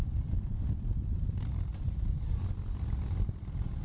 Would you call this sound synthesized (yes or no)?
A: no